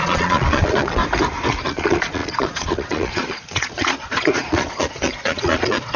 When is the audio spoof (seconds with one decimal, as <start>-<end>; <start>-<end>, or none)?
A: 0.0-1.0; 1.6-6.0